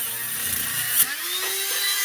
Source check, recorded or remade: recorded